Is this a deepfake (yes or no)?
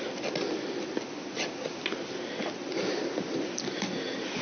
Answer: no